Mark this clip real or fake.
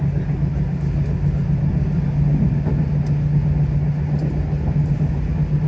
real